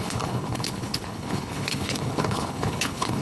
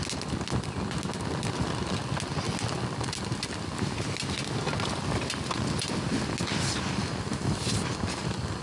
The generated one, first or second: first